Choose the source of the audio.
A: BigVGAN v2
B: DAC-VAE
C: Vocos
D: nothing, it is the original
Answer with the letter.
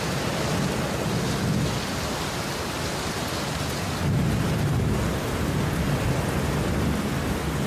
D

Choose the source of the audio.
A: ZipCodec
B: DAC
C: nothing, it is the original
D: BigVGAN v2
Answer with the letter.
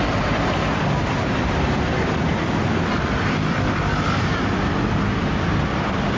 D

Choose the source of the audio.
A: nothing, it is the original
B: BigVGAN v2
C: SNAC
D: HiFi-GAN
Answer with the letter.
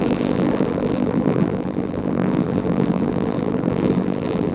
B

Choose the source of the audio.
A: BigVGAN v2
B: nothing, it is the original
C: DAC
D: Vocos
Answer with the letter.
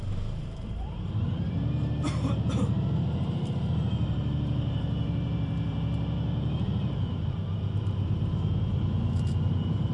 A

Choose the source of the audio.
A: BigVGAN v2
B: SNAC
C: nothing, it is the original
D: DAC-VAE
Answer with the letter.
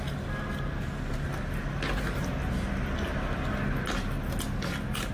C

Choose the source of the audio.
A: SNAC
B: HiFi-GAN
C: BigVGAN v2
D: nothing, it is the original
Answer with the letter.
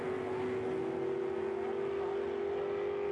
D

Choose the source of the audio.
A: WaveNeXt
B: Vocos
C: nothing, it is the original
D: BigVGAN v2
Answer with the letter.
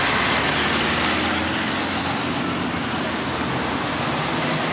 C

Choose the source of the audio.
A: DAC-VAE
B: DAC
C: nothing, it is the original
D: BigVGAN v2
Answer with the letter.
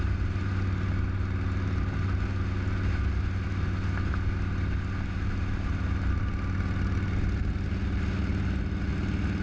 C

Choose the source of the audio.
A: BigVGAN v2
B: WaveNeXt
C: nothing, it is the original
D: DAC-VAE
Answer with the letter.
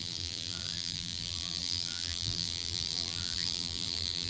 A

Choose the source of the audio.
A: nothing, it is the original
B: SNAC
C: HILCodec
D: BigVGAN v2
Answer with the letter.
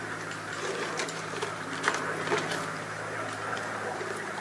D